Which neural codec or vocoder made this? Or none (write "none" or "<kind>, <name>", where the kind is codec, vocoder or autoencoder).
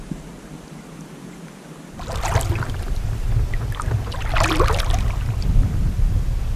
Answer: none